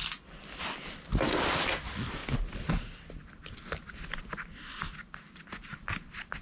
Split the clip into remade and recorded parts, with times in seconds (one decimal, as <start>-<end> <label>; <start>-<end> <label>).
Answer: 0.0-6.4 recorded